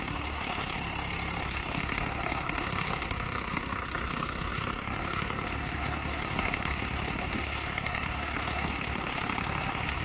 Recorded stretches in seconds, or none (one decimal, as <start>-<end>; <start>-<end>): 0.8-1.4